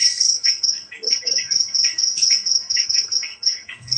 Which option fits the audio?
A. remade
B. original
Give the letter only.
A